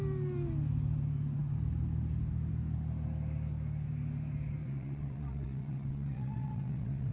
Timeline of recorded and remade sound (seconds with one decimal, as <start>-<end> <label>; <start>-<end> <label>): 0.0-4.6 recorded; 4.6-7.1 remade